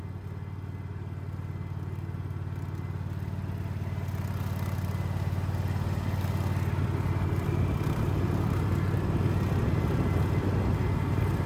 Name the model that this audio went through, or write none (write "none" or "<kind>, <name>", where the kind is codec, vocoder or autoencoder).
none